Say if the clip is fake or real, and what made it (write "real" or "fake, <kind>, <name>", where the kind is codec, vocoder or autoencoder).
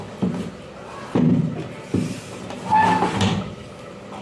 real